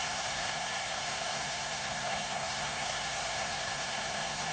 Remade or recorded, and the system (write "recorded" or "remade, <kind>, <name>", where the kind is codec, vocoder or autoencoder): remade, codec, SNAC